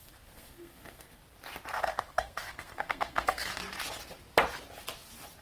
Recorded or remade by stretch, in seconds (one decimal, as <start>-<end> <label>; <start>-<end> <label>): 0.0-1.2 remade; 1.2-1.8 recorded; 1.8-3.5 remade; 3.5-5.4 recorded